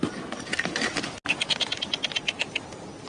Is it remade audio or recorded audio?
recorded